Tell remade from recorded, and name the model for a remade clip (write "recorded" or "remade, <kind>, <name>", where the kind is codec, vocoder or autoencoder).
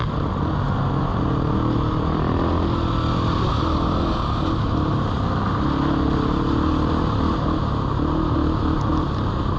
recorded